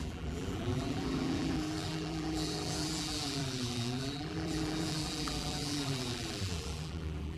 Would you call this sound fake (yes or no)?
yes